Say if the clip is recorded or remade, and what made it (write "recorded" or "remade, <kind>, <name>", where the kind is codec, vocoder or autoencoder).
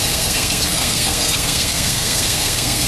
remade, codec, SNAC